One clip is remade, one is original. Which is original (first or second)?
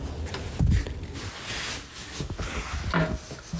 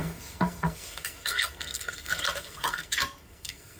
first